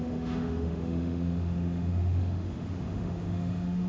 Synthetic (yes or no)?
yes